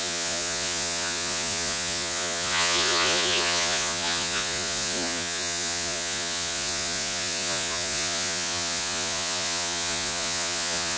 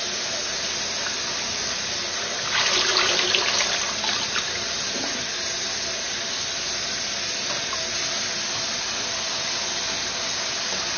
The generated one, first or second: first